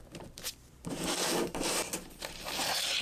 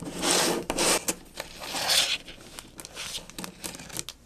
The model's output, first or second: first